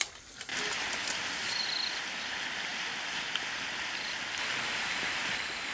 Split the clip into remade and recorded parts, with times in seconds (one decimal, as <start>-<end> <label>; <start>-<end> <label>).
0.0-5.7 recorded

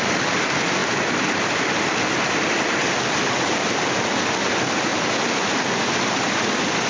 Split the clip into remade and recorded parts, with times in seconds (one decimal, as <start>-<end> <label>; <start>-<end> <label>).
0.0-6.9 recorded

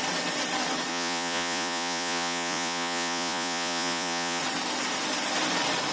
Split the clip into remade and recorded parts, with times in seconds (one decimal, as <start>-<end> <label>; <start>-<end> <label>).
0.0-0.9 recorded; 0.9-4.4 remade; 4.4-5.9 recorded

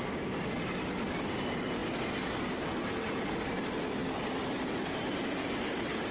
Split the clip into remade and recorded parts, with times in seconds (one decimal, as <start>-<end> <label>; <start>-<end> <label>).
0.0-6.1 recorded

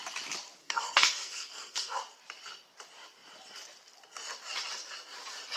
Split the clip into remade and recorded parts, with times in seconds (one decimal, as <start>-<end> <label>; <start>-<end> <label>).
0.0-0.6 recorded; 0.6-2.0 remade; 2.0-5.6 recorded

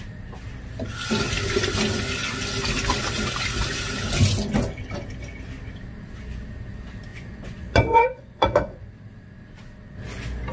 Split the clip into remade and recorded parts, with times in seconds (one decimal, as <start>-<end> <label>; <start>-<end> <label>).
0.0-7.1 recorded; 7.1-8.9 remade; 8.9-10.5 recorded